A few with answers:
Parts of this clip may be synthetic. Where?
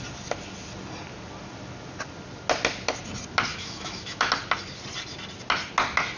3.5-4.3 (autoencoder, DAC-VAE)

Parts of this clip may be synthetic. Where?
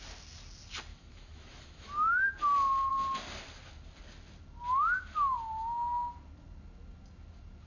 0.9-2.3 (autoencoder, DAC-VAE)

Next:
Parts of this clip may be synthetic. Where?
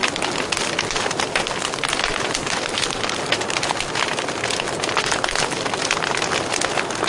none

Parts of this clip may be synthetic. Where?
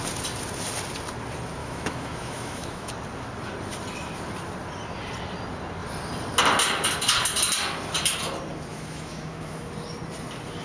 1.6-2.9 (autoencoder, DAC-VAE); 8.7-9.7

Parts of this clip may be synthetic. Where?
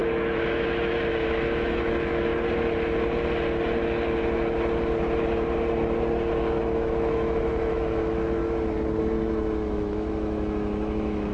0.0-2.3 (autoencoder, DAC-VAE); 6.6-8.4; 9.0-11.3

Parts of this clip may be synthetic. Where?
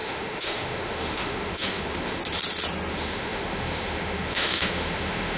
0.0-2.2 (autoencoder, DAC-VAE); 2.9-5.4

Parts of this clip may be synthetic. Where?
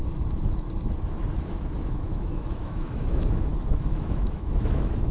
1.8-5.1 (autoencoder, DAC-VAE)